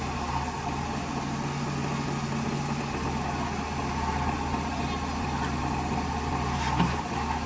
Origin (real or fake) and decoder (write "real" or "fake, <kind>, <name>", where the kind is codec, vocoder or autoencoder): real